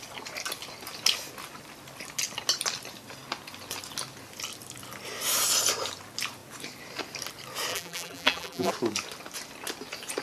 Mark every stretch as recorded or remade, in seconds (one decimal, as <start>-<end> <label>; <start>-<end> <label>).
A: 0.0-7.7 recorded; 7.7-8.7 remade; 8.7-10.2 recorded